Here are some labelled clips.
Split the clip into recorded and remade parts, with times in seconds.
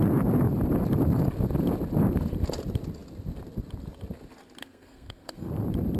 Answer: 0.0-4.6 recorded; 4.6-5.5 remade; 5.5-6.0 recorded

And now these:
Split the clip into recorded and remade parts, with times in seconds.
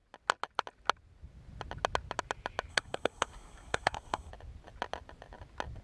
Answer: 0.0-2.7 recorded; 2.7-4.3 remade; 4.3-5.8 recorded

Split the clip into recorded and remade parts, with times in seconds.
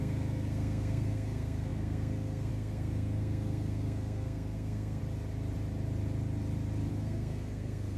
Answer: 0.0-5.0 remade; 5.0-6.9 recorded; 6.9-8.0 remade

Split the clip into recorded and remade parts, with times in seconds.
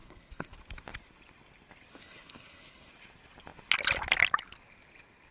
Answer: 0.0-0.5 remade; 0.5-1.9 recorded; 1.9-2.9 remade; 2.9-5.3 recorded